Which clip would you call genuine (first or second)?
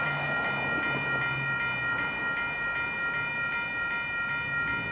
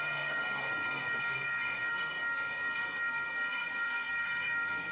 first